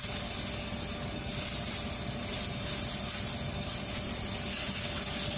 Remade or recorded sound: recorded